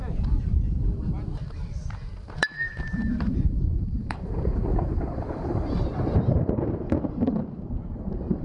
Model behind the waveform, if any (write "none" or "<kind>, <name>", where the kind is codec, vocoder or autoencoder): vocoder, BigVGAN v2